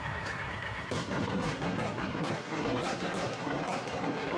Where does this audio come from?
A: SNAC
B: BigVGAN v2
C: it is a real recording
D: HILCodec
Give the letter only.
A